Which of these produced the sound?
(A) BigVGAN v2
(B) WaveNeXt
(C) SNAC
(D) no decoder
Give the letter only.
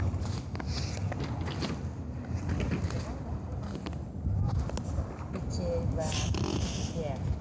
D